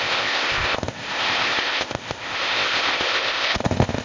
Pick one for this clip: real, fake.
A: fake